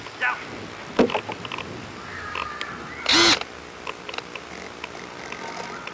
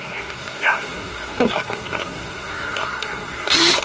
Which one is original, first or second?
first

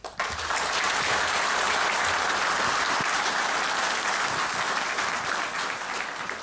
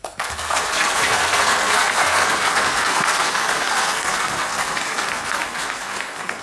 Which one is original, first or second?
first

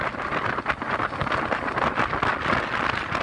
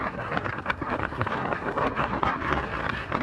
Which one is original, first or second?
first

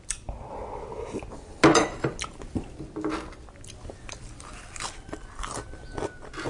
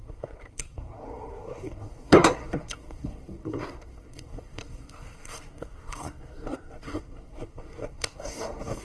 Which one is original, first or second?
first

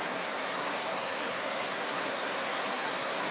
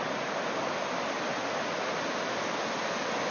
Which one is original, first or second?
second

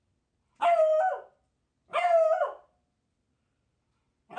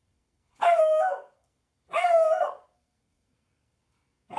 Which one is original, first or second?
first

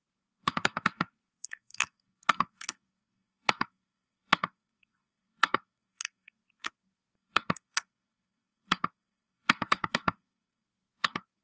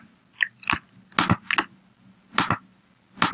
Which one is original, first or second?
second